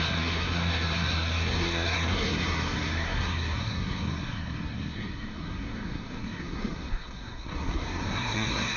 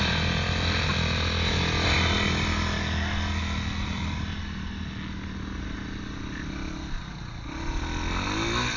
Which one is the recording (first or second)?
second